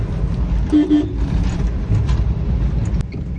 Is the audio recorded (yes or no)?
yes